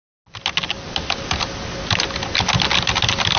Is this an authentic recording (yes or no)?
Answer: yes